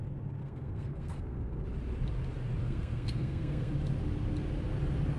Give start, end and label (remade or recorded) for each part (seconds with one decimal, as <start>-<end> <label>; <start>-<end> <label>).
0.0-0.4 recorded; 0.4-1.6 remade; 1.6-2.6 recorded; 2.6-3.7 remade; 3.7-5.2 recorded